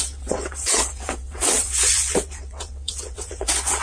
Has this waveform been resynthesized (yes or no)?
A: yes